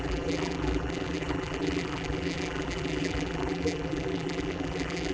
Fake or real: fake